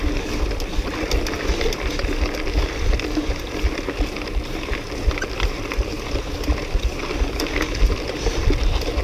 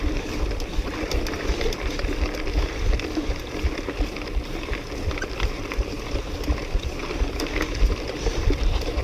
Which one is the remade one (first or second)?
second